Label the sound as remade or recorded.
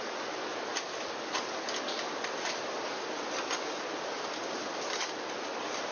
recorded